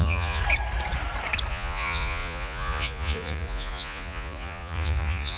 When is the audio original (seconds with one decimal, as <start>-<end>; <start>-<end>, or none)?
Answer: 0.4-1.5